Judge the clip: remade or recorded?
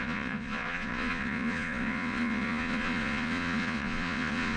remade